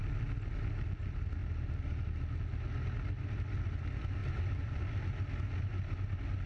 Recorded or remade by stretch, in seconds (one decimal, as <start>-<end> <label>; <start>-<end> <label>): 0.0-4.2 recorded; 4.2-4.9 remade; 4.9-6.5 recorded